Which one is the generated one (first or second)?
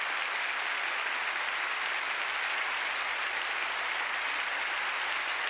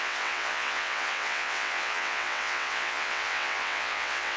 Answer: second